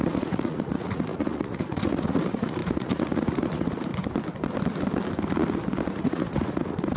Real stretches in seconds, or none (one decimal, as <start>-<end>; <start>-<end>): 3.9-5.9